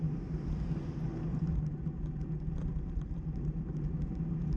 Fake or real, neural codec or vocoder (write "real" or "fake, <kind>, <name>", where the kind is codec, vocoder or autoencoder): real